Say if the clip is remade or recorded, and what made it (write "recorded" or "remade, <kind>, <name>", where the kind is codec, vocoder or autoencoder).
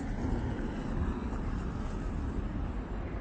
recorded